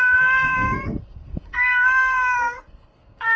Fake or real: fake